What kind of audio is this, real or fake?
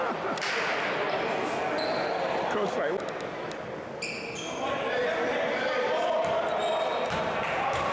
real